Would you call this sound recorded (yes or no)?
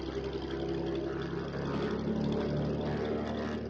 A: yes